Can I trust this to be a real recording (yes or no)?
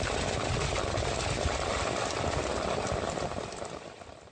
yes